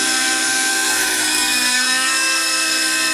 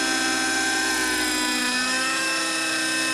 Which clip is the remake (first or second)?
first